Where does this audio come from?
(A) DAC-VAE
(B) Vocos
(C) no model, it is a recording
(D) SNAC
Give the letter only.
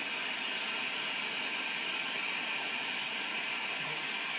C